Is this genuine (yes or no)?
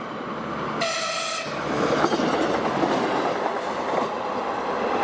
yes